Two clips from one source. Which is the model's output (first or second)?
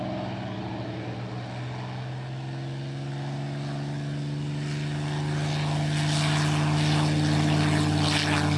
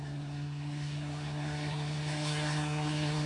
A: second